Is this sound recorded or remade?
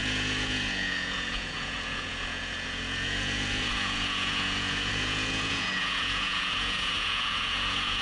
remade